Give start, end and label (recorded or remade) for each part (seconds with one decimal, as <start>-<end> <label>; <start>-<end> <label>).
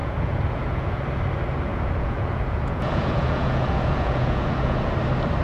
0.0-1.0 remade; 1.0-1.7 recorded; 1.7-4.9 remade; 4.9-5.4 recorded